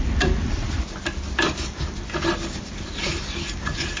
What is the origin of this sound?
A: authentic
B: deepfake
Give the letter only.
A